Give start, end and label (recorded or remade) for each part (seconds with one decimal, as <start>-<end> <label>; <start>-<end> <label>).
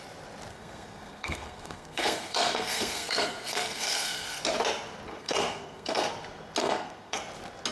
0.0-0.5 recorded; 0.5-4.4 remade; 4.4-5.1 recorded; 5.1-6.1 remade; 6.1-6.6 recorded; 6.6-7.2 remade; 7.2-7.7 recorded